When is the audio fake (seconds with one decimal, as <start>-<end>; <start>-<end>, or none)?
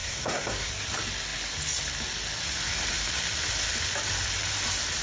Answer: 0.0-0.7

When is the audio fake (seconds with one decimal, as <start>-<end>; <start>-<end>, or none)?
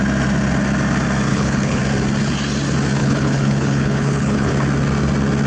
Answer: 1.3-1.8; 3.0-4.5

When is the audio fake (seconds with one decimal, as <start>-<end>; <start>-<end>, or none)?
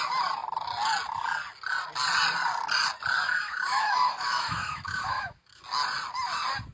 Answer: 3.2-5.6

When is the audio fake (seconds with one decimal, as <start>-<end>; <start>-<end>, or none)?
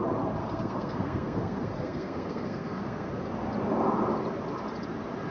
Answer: 0.4-3.1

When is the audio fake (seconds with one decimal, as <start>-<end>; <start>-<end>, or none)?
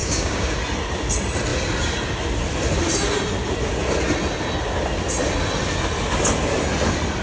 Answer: 0.0-0.5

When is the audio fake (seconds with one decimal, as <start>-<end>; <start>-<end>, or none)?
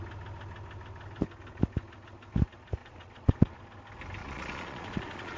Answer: 2.8-3.6; 4.2-5.4